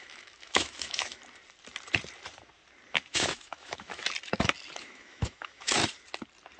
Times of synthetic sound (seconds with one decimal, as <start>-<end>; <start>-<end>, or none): 0.0-1.2; 3.1-4.0; 4.8-5.8